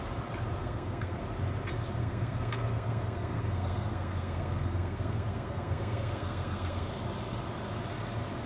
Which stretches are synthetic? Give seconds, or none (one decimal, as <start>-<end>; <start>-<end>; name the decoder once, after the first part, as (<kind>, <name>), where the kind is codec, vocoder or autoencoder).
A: 0.6-1.2 (codec, SNAC); 2.0-6.9